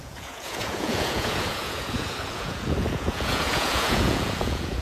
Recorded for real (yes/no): no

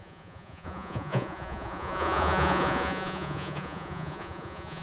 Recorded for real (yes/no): no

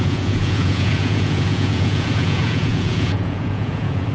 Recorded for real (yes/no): no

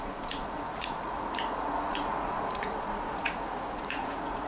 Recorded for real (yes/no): no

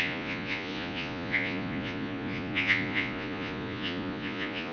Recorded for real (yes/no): no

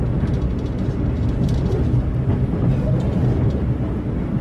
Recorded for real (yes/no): yes